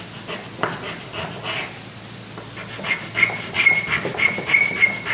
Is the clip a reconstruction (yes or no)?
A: no